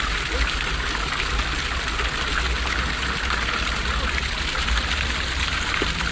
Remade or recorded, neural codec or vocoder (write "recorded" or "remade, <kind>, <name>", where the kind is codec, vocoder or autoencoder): recorded